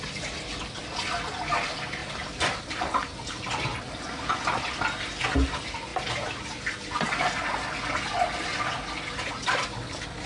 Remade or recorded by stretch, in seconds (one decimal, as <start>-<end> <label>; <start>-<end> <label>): 0.0-2.0 recorded; 2.0-3.8 remade; 3.8-10.3 recorded